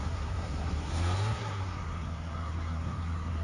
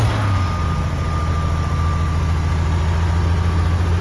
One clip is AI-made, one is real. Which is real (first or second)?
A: second